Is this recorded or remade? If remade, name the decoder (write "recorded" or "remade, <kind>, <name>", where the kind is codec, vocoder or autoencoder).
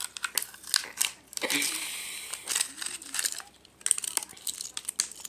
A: recorded